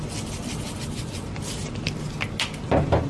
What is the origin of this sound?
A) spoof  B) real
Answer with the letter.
B